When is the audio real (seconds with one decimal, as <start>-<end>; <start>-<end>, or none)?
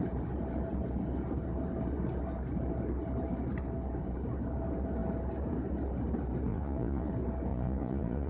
0.0-6.5; 7.1-7.5